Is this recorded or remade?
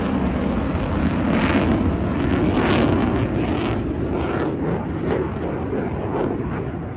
recorded